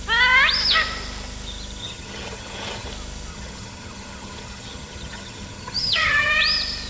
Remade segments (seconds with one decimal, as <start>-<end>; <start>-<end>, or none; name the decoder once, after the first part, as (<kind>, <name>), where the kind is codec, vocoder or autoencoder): 1.8-2.9 (vocoder, HiFi-GAN); 3.3-6.3